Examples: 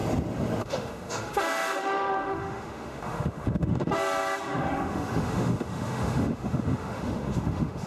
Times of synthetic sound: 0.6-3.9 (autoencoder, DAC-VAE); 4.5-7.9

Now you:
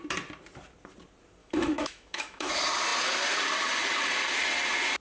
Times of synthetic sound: 1.4-2.5 (autoencoder, DAC-VAE)

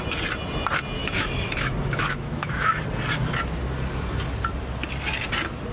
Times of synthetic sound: 1.0-2.8 (autoencoder, DAC-VAE)